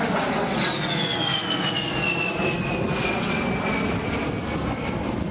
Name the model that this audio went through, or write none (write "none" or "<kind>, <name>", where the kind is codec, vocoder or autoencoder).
none